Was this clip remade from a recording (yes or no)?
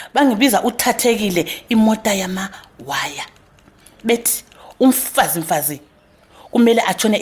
no